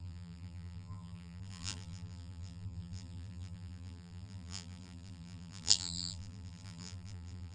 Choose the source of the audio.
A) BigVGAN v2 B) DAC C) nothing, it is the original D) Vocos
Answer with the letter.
A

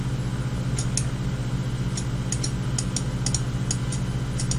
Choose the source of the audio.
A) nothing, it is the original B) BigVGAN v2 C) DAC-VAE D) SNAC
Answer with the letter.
A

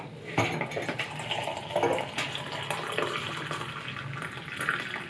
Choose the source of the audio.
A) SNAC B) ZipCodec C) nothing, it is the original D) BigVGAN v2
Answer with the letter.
C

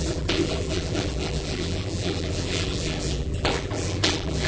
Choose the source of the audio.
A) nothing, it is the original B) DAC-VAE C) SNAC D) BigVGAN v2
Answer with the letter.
D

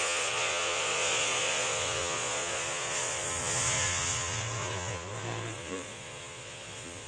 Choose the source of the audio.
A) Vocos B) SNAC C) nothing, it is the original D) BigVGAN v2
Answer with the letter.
A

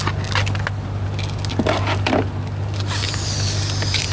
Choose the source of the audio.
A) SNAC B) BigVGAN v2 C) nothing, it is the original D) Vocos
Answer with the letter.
C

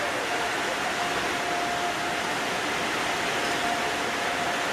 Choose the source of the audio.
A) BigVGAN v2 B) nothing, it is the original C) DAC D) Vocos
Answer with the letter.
B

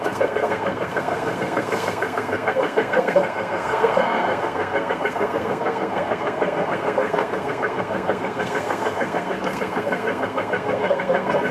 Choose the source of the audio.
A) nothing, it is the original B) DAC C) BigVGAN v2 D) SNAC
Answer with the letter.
D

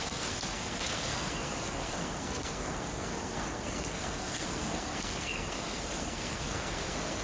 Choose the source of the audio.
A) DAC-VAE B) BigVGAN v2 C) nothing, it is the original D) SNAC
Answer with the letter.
D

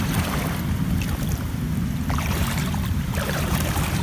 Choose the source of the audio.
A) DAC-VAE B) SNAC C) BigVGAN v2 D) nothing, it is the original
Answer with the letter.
C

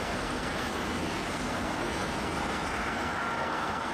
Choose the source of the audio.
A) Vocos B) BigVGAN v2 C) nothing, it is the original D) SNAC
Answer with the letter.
D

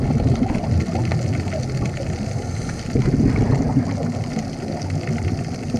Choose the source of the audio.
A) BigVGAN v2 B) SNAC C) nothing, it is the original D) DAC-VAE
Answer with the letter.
C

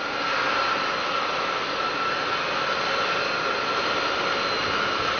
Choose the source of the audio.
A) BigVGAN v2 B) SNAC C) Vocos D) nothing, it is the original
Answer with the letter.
D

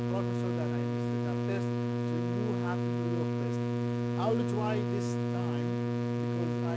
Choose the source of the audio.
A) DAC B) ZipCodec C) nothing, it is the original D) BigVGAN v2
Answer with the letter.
C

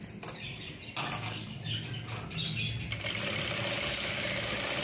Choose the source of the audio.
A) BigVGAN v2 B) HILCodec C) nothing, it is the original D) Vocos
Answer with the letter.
C